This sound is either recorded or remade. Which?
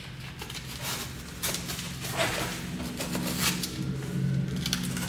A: recorded